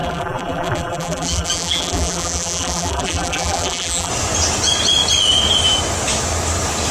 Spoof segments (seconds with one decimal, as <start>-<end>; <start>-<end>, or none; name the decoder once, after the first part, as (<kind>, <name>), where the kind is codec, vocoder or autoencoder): 0.0-4.1 (vocoder, BigVGAN v2)